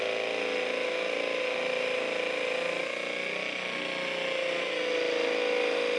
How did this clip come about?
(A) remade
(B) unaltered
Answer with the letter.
B